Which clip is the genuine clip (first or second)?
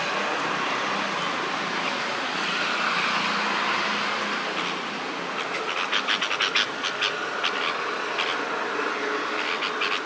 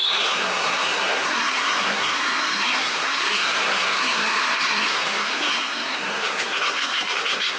first